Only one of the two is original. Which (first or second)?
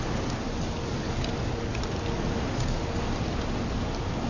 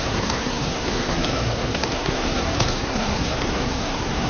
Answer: first